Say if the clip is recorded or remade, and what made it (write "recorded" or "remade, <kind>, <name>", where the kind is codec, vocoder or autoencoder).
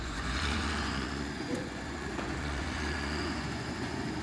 remade, vocoder, Vocos